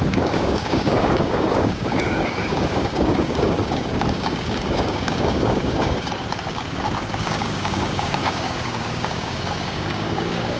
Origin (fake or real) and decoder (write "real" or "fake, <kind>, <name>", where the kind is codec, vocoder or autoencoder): fake, codec, DAC